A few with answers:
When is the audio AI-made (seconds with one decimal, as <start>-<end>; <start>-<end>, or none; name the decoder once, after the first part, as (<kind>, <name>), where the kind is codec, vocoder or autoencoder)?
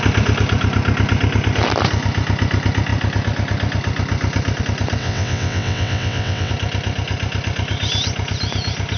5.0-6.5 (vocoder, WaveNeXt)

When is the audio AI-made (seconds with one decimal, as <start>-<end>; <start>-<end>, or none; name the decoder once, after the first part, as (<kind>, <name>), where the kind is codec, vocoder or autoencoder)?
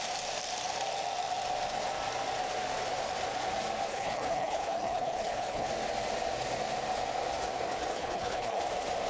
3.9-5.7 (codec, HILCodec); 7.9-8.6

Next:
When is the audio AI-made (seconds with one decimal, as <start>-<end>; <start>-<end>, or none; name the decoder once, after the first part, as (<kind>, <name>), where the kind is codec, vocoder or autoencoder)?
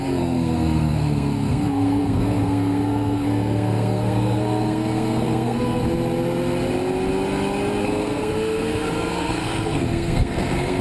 0.0-5.8 (codec, SNAC); 7.8-10.8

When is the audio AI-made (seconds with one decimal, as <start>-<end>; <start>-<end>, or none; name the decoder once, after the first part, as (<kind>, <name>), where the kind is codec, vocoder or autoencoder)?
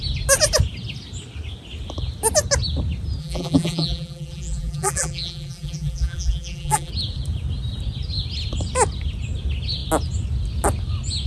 3.2-6.9 (vocoder, BigVGAN v2)